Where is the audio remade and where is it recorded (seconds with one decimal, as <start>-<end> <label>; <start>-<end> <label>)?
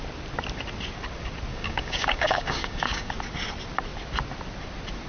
0.0-1.5 recorded; 1.5-3.1 remade; 3.1-5.1 recorded